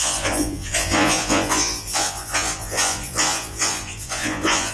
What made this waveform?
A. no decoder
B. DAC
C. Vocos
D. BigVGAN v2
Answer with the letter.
C